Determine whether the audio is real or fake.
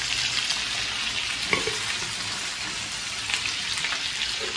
real